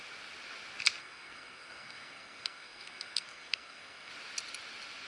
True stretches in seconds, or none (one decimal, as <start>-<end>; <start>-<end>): 0.0-1.0; 4.1-5.1

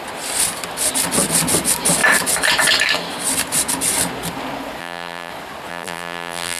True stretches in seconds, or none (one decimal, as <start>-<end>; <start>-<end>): 0.0-4.8; 5.3-5.7

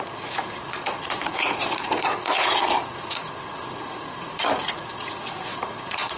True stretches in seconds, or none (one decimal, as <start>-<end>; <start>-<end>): none

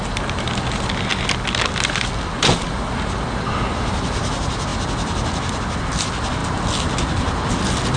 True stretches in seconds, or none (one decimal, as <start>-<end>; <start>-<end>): 0.0-8.0

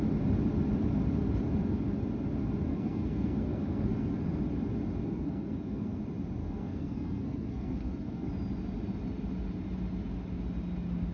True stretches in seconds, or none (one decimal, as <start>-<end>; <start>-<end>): 0.0-2.7; 4.4-5.0; 6.0-6.4; 8.3-11.1